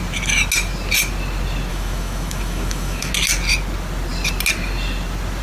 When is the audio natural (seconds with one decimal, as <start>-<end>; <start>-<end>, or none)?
0.0-1.7; 3.1-5.4